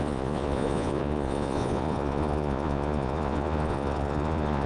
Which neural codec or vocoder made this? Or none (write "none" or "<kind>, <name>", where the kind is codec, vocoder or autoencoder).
vocoder, Vocos